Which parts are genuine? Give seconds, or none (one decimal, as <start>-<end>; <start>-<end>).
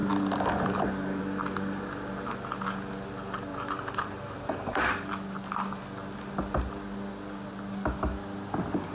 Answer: 0.0-3.5; 5.1-8.9